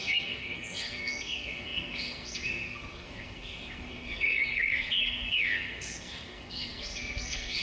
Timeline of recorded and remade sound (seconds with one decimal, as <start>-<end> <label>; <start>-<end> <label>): 0.0-7.6 remade